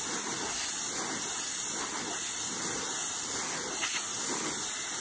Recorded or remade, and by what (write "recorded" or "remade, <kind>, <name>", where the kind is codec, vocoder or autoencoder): recorded